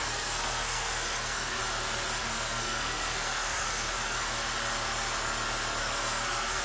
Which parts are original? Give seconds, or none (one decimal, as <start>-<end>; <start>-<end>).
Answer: 1.6-2.2; 4.3-5.8